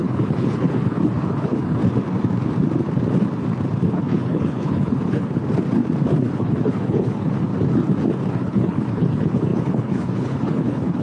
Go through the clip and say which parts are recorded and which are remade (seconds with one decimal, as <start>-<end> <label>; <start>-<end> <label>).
0.0-1.8 remade; 1.8-3.9 recorded; 3.9-5.4 remade; 5.4-6.2 recorded; 6.2-7.5 remade; 7.5-8.3 recorded; 8.3-11.0 remade